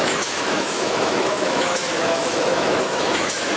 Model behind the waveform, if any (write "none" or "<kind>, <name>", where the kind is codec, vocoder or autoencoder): autoencoder, DAC-VAE